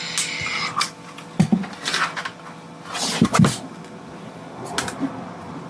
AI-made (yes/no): no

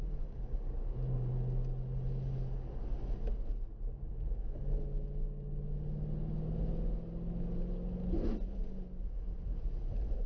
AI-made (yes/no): no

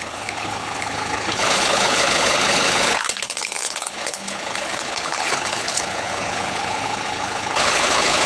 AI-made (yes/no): yes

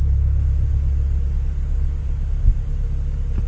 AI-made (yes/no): no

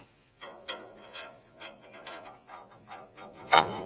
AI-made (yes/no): yes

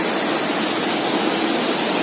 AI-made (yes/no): no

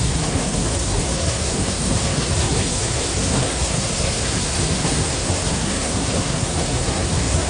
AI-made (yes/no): yes